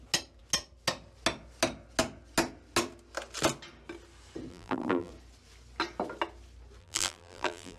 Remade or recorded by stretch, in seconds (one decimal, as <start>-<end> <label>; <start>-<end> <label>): 0.0-4.5 recorded; 4.5-5.1 remade; 5.1-6.8 recorded; 6.8-7.8 remade